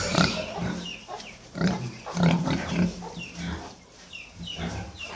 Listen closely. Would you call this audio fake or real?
fake